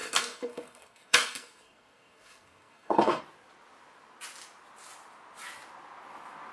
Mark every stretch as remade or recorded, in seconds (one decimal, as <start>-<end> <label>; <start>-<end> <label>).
0.0-3.2 remade; 3.2-6.5 recorded